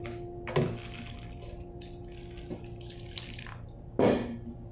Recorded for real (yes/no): yes